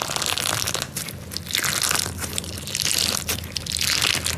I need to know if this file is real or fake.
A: real